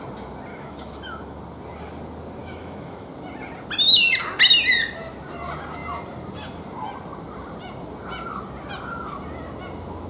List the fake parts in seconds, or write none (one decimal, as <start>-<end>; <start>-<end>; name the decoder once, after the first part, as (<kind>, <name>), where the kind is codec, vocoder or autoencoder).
0.5-1.4 (autoencoder, DAC-VAE); 2.4-3.1

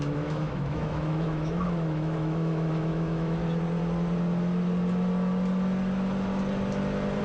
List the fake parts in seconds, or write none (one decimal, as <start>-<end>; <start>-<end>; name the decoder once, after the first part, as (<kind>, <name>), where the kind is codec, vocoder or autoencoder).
0.0-3.4 (autoencoder, DAC-VAE)

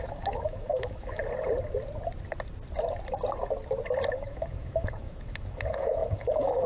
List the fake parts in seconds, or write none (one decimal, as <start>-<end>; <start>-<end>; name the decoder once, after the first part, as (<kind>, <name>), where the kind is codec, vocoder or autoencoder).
0.0-1.2 (autoencoder, DAC-VAE); 4.1-6.7

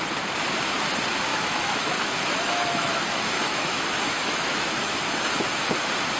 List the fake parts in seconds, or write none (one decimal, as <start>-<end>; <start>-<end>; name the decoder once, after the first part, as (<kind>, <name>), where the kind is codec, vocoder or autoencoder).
1.3-5.0 (autoencoder, DAC-VAE)

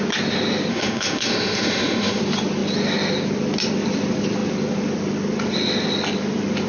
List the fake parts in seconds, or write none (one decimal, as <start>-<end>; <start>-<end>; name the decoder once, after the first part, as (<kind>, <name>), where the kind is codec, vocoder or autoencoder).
0.7-2.2 (autoencoder, DAC-VAE)

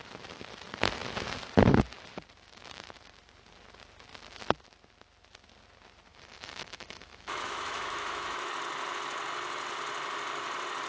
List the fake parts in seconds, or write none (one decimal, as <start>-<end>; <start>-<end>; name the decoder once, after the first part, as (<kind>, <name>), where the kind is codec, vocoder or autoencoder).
6.1-8.5 (autoencoder, DAC-VAE)

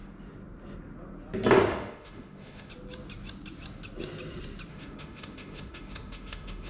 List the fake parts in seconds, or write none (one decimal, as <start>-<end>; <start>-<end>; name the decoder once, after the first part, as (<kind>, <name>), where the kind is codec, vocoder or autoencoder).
1.7-2.7 (autoencoder, DAC-VAE); 4.7-6.7

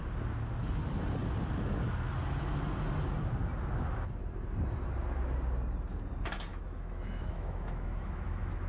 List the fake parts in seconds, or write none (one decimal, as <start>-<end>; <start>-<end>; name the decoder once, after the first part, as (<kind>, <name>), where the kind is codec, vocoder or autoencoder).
6.5-8.7 (autoencoder, DAC-VAE)